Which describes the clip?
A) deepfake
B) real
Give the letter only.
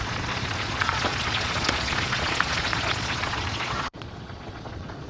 A